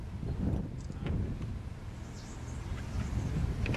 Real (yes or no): yes